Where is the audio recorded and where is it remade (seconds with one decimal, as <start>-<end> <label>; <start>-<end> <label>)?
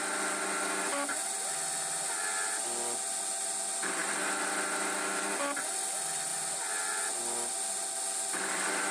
0.0-8.9 recorded